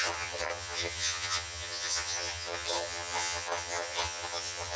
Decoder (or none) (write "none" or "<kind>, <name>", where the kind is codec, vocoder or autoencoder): vocoder, HiFi-GAN